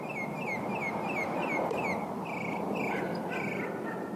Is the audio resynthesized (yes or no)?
no